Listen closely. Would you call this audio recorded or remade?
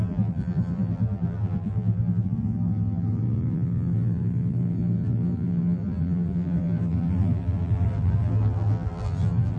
remade